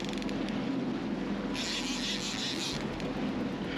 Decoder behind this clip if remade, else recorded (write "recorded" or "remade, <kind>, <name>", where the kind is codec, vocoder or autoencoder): recorded